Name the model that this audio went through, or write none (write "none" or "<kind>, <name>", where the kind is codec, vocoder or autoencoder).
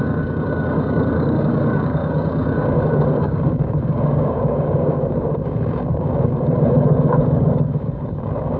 codec, DAC